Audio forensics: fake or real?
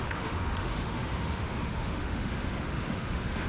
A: fake